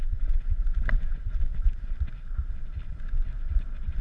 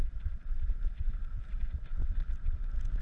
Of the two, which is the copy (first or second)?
second